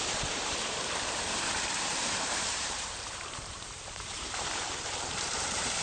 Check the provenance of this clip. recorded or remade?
remade